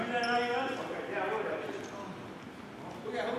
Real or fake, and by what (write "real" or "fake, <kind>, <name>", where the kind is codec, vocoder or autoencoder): real